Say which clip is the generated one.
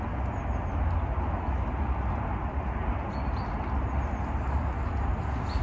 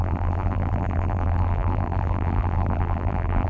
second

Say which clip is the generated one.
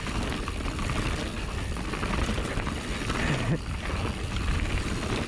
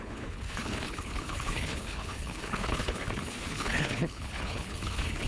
second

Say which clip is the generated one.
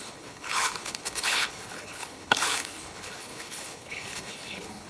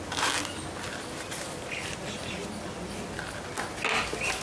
first